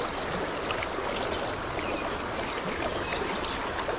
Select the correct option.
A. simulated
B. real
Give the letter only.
B